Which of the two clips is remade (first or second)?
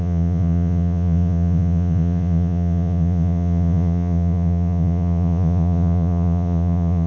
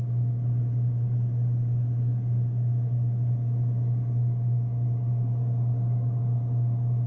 first